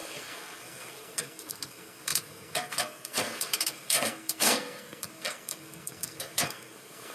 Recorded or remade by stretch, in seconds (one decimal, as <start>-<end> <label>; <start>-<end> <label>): 0.0-7.1 remade